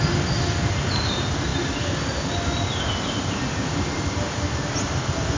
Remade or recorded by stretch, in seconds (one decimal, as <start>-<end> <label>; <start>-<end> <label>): 0.0-5.4 recorded